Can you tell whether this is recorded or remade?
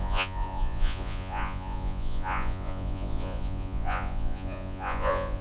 remade